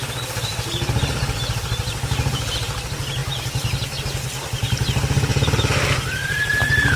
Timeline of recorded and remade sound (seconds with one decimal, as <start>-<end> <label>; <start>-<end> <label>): 0.0-5.3 recorded; 5.3-6.4 remade; 6.4-7.0 recorded